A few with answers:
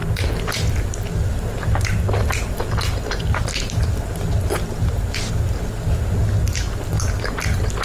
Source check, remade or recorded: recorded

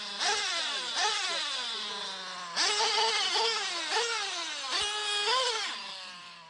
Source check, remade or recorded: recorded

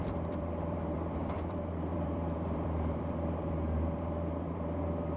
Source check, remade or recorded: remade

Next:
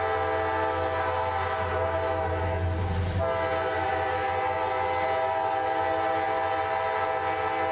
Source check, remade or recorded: recorded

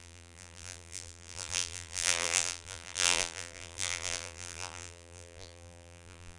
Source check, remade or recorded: remade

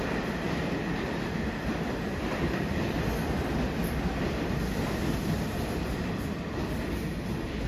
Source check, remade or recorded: recorded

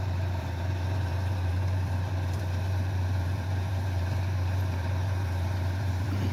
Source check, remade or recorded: remade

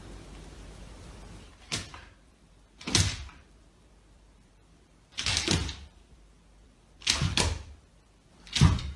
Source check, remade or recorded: remade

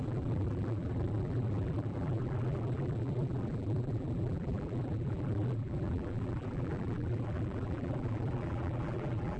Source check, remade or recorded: remade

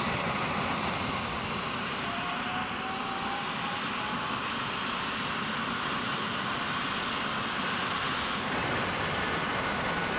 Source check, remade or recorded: remade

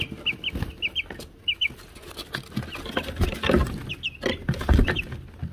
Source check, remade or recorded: recorded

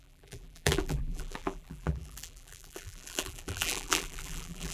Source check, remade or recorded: remade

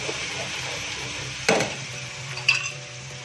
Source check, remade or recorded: remade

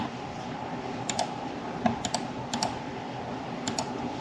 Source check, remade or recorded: remade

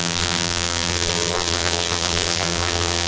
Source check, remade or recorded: remade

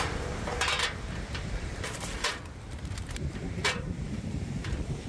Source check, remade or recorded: remade